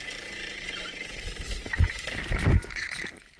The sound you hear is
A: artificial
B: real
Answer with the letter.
B